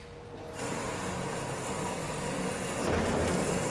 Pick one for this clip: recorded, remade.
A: recorded